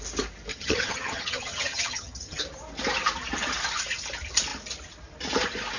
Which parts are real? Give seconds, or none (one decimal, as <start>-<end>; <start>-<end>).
0.0-0.5; 2.4-5.8